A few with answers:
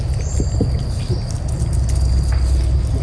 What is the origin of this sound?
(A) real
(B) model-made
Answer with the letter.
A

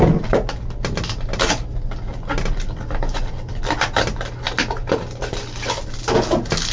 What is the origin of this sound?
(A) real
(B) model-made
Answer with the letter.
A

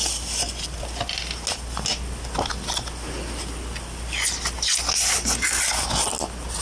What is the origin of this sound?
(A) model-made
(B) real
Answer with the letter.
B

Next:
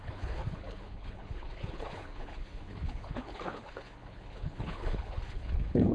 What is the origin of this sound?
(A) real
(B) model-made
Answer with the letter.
B